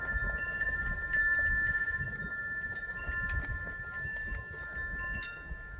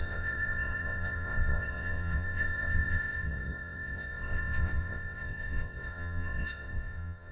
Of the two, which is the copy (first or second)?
second